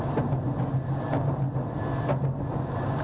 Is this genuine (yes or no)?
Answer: yes